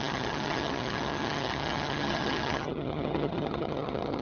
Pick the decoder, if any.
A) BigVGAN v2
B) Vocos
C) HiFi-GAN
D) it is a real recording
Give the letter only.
C